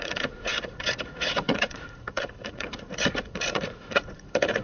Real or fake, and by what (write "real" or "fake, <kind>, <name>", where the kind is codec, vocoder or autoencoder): fake, vocoder, Vocos